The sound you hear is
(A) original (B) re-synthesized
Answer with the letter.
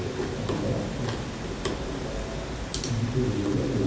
A